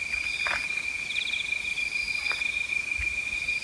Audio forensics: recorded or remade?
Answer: recorded